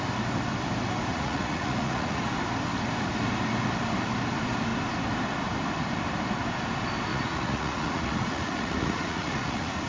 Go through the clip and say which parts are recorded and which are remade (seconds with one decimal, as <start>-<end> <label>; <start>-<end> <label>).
0.0-1.1 recorded; 1.1-2.2 remade; 2.2-7.1 recorded; 7.1-9.9 remade